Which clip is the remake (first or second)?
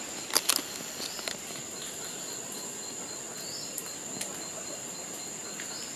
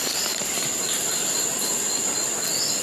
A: second